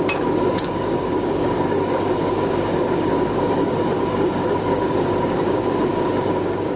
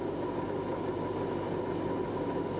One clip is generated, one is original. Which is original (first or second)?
second